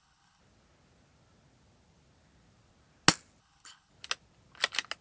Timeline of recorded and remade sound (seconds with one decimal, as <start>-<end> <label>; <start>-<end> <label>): 0.0-0.4 remade; 0.4-3.4 recorded; 3.4-3.9 remade; 3.9-5.0 recorded